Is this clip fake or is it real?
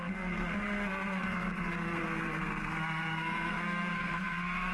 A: fake